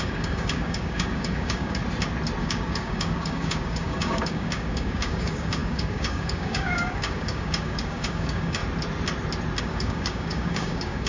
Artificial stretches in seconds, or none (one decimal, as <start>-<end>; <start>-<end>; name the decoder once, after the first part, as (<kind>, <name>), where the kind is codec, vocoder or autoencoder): 0.0-1.8 (codec, DAC); 2.4-8.6; 9.6-11.1

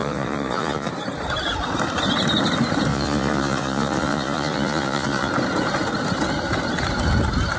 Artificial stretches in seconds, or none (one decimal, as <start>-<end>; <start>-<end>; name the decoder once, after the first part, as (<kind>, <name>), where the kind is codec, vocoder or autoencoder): 0.0-0.9 (vocoder, Vocos); 2.9-5.3

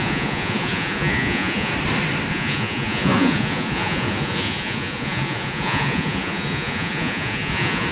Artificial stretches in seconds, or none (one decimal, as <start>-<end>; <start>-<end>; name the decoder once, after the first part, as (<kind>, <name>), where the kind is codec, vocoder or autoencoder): 0.0-1.7 (vocoder, Vocos); 2.3-7.9